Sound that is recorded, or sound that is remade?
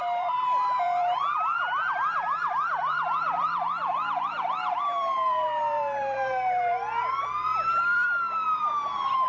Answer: remade